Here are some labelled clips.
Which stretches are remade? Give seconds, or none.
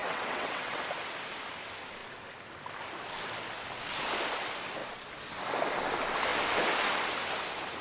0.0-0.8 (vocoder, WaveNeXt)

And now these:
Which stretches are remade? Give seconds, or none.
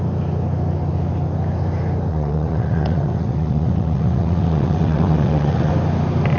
2.1-5.7 (vocoder, WaveNeXt)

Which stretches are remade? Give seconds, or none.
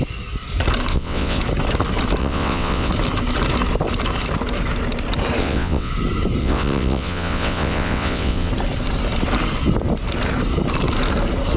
0.9-1.4 (vocoder, WaveNeXt); 2.2-2.9; 5.4-5.9; 6.4-8.5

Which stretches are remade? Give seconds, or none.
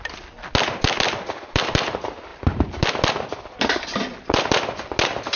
none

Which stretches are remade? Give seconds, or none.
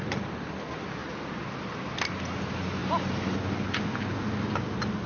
none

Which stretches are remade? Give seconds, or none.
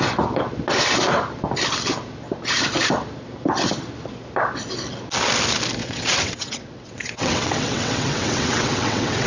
5.8-9.3 (vocoder, WaveNeXt)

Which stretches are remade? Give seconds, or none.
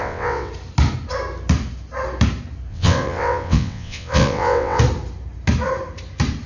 0.0-0.5 (vocoder, WaveNeXt); 2.7-4.8